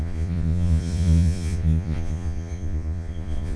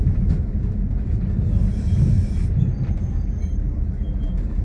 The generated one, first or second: first